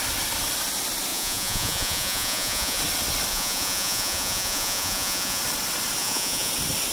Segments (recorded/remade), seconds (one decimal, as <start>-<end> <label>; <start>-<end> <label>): 0.0-1.1 recorded; 1.1-2.8 remade; 2.8-3.3 recorded; 3.3-5.4 remade; 5.4-6.0 recorded; 6.0-6.5 remade; 6.5-6.9 recorded